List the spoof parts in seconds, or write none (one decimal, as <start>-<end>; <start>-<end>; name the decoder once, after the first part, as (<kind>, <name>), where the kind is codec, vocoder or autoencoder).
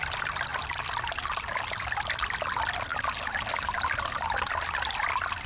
none